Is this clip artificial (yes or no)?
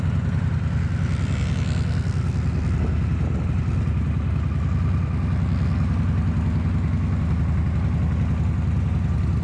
no